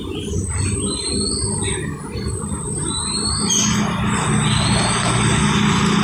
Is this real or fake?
real